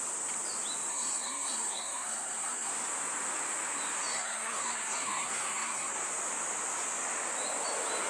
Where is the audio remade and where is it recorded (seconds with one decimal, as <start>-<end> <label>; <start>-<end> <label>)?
0.0-0.9 recorded; 0.9-2.7 remade; 2.7-4.1 recorded; 4.1-6.0 remade; 6.0-8.1 recorded

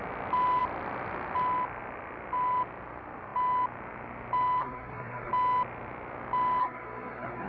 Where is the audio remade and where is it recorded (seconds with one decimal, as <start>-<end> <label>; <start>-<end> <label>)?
0.0-4.6 recorded; 4.6-5.3 remade; 5.3-6.6 recorded; 6.6-7.5 remade

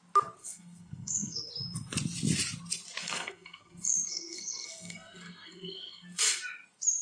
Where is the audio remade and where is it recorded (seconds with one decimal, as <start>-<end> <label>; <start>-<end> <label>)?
0.0-0.4 recorded; 0.4-1.5 remade; 1.5-3.0 recorded; 3.0-6.4 remade; 6.4-7.0 recorded

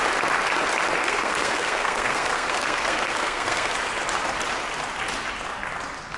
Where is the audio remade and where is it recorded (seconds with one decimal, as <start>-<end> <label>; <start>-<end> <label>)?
0.0-1.0 recorded; 1.0-3.7 remade; 3.7-6.2 recorded

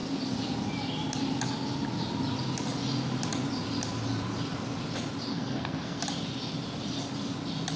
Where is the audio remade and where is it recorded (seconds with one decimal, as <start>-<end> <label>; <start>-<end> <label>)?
0.0-5.3 recorded; 5.3-6.0 remade; 6.0-7.8 recorded

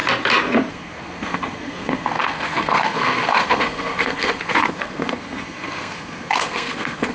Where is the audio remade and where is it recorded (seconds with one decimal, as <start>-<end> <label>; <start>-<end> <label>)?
0.0-0.7 recorded; 0.7-7.1 remade

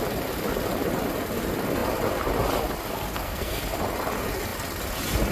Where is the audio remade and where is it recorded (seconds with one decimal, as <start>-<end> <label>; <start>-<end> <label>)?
0.0-2.9 recorded; 2.9-3.6 remade; 3.6-5.3 recorded

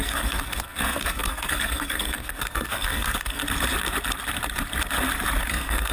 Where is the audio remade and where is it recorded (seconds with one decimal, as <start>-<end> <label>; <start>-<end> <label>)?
0.0-3.4 remade; 3.4-5.5 recorded; 5.5-5.9 remade